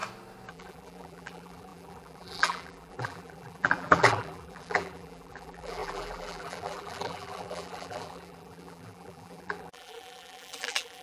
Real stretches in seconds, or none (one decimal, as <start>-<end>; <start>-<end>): 0.0-0.5

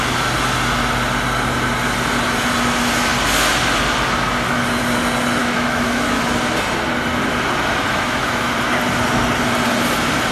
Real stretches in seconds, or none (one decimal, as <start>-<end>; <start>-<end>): 0.0-5.4; 6.2-7.9; 8.5-10.3